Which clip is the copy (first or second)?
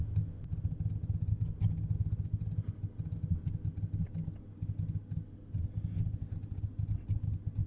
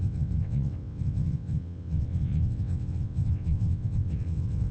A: second